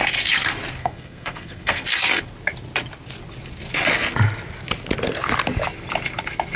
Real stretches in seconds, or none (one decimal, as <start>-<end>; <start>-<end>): 0.0-0.8; 1.8-6.6